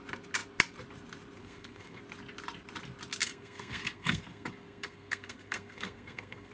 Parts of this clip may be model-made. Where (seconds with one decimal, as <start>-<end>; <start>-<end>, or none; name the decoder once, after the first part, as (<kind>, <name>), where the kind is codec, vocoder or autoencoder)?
1.4-2.0 (codec, SNAC); 3.2-6.5